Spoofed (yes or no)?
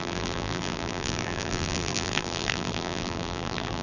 yes